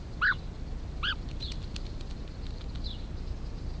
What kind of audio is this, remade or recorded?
recorded